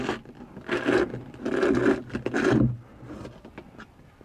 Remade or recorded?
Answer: recorded